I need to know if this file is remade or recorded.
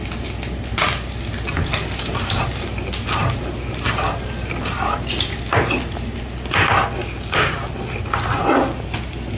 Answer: recorded